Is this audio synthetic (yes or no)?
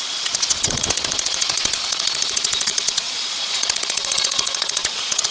yes